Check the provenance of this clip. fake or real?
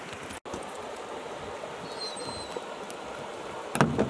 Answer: real